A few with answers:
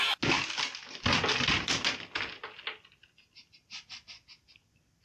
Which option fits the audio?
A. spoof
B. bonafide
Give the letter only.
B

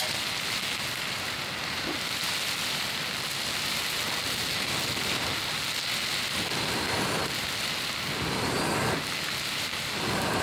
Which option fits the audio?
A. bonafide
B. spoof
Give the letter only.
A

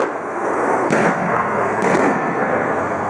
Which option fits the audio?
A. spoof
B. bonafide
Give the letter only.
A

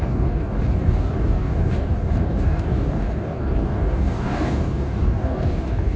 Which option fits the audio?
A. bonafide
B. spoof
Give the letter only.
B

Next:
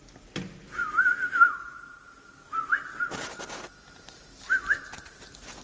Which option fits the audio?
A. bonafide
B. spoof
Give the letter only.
A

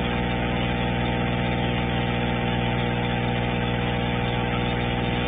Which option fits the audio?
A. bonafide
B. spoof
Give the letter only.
A